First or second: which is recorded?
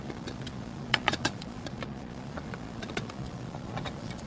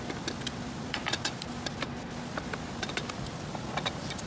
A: second